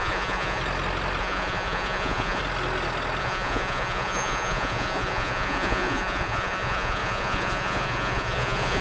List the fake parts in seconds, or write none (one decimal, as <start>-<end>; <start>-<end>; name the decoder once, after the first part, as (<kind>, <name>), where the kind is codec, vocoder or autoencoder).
0.0-0.6 (vocoder, Vocos); 1.2-2.4; 3.2-8.8